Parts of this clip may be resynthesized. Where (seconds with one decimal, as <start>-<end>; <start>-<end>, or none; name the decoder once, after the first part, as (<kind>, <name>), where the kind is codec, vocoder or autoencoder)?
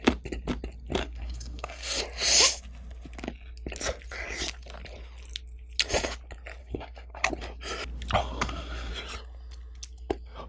1.0-2.0 (codec, SNAC); 6.6-7.3; 8.2-8.9